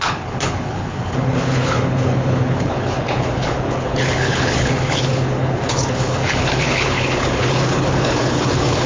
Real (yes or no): no